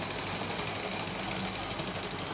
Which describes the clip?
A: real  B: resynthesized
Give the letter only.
A